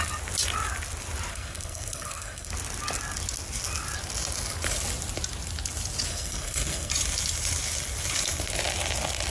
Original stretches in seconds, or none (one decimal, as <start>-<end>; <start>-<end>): 0.0-1.3; 2.5-6.1; 6.9-9.3